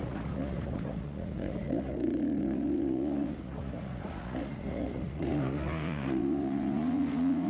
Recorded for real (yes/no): no